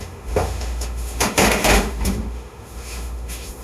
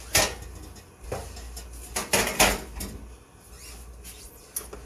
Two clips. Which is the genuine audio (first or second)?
second